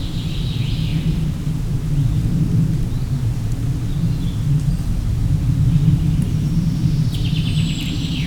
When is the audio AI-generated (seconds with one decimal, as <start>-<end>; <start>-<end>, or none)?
none